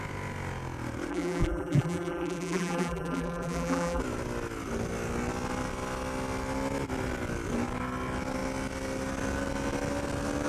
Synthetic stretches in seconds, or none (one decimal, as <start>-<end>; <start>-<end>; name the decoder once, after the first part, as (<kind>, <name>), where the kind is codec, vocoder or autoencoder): 1.1-4.0 (vocoder, BigVGAN v2)